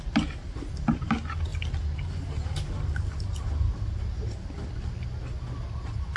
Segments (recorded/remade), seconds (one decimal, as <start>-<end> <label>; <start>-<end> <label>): 0.0-6.2 recorded